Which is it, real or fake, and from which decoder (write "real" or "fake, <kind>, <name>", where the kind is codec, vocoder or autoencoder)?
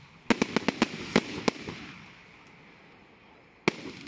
real